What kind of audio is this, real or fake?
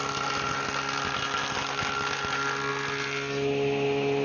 real